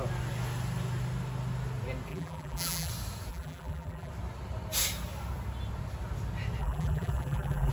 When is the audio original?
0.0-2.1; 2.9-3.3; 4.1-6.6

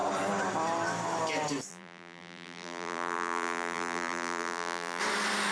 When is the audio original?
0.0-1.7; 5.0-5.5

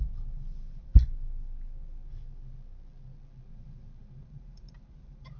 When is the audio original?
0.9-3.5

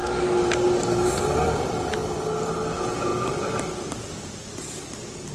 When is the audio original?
0.0-5.3

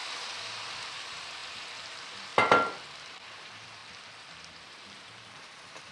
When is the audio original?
0.0-0.8; 1.4-1.9; 2.3-3.1; 3.8-4.6

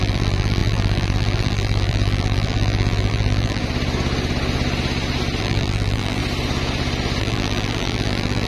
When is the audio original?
3.6-5.4; 6.2-7.2

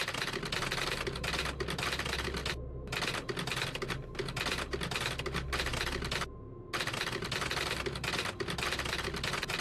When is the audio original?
0.0-9.6